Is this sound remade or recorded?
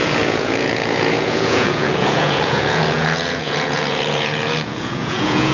remade